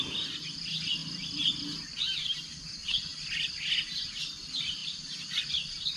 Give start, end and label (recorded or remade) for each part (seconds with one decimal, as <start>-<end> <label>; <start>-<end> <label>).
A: 0.0-6.0 recorded